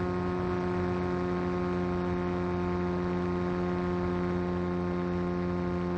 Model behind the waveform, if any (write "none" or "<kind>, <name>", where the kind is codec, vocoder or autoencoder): none